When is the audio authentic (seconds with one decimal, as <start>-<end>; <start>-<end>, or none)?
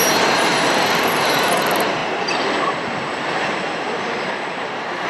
none